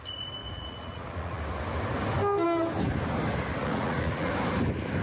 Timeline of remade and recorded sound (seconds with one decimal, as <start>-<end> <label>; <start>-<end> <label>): 0.0-0.4 recorded; 0.4-1.4 remade; 1.4-3.6 recorded; 3.6-4.3 remade; 4.3-5.0 recorded